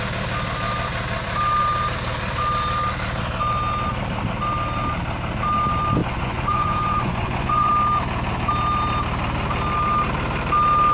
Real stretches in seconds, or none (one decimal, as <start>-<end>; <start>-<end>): 0.0-6.0; 7.7-10.9